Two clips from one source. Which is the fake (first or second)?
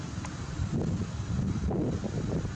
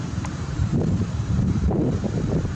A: second